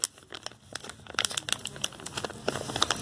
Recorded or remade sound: recorded